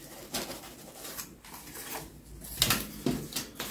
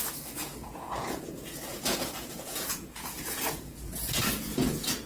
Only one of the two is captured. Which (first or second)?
first